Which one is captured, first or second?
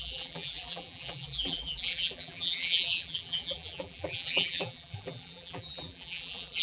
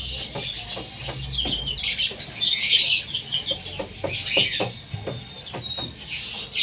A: second